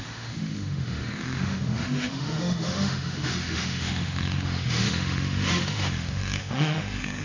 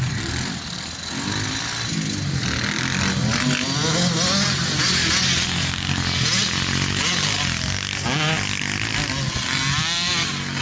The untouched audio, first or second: second